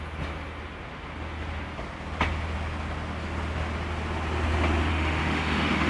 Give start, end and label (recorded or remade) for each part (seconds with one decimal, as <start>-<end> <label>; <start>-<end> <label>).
0.0-4.9 recorded; 4.9-5.9 remade